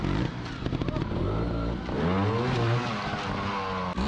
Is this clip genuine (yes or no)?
yes